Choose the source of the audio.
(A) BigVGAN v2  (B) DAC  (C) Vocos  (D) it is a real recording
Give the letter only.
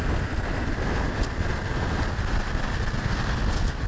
D